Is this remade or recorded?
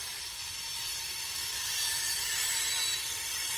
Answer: remade